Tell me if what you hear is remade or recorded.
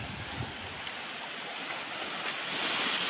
recorded